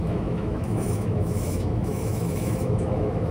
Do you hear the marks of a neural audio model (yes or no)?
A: yes